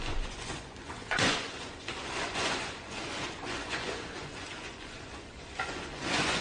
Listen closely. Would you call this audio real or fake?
fake